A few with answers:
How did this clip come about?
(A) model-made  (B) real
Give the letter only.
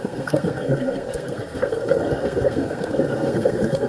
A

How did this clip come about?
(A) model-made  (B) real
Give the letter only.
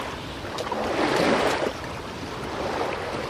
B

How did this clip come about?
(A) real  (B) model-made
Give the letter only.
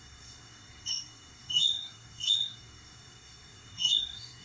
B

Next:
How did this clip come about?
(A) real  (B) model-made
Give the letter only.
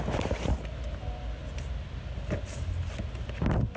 A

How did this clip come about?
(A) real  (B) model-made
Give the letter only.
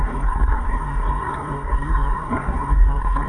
B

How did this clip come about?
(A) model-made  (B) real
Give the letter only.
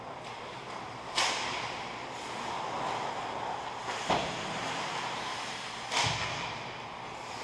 B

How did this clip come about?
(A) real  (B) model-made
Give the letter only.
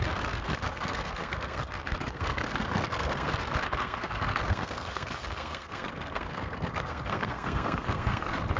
B